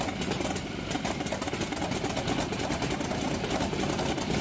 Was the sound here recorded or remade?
recorded